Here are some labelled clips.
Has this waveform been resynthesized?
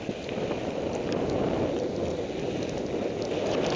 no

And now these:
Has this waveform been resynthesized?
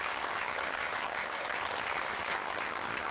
yes